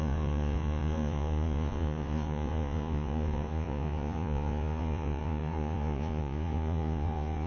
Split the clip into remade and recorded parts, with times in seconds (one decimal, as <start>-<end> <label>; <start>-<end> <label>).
0.0-7.5 remade